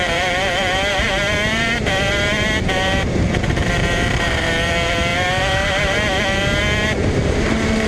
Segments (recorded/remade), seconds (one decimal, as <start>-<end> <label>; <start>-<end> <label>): 0.0-7.9 remade